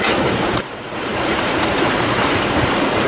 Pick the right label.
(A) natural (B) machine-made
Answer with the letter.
B